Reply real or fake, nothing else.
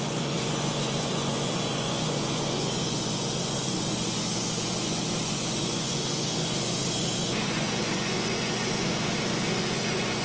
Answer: fake